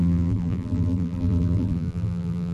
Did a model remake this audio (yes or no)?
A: yes